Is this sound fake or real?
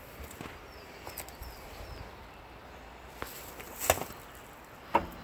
real